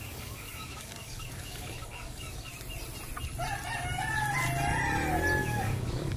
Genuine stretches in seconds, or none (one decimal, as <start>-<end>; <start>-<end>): 2.5-5.4

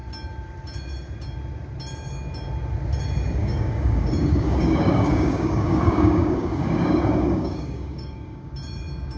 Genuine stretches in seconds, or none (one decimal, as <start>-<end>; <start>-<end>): 0.0-3.4; 8.5-9.2

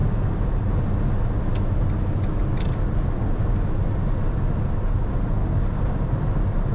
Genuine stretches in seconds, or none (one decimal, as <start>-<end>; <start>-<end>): 0.6-5.4; 6.1-6.7

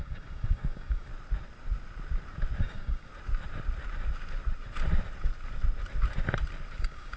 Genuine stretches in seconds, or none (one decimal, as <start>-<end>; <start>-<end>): 1.1-2.6; 3.1-6.8

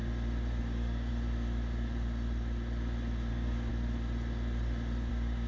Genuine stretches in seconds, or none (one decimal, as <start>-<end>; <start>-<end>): 0.0-0.6; 1.1-3.3; 3.7-5.1

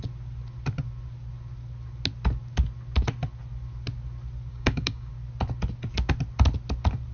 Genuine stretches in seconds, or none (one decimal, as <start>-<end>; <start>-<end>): 0.0-4.5; 5.1-7.1